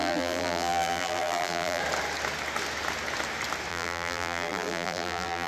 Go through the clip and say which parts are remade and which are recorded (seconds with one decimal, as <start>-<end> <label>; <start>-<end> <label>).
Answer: 0.0-1.8 remade; 1.8-3.7 recorded; 3.7-5.5 remade